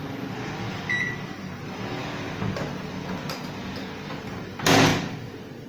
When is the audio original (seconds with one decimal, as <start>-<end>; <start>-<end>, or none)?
0.0-5.7